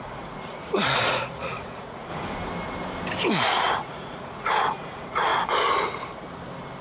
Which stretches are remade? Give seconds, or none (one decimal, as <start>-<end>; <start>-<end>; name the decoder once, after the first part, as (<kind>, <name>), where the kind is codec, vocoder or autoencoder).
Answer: 0.0-2.1 (vocoder, Vocos); 3.3-5.3